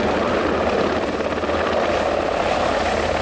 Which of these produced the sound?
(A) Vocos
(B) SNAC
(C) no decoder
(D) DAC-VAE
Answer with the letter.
C